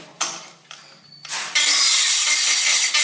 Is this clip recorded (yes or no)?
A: yes